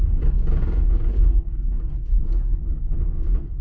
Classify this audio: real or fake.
fake